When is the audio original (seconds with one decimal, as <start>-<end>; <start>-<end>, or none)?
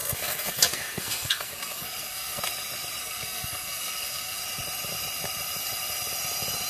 2.4-3.0; 4.4-6.7